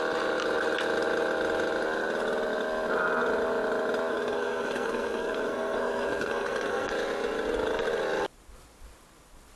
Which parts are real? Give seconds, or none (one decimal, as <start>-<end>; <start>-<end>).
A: 0.0-4.1; 6.9-9.6